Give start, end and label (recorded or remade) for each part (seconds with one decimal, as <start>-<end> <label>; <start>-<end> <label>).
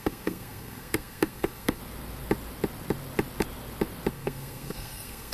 0.0-1.8 remade; 1.8-4.1 recorded; 4.1-5.3 remade